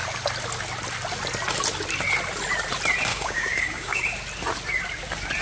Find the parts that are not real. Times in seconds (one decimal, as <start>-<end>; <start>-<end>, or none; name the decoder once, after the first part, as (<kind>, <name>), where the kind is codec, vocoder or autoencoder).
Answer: 3.1-4.0 (codec, DAC)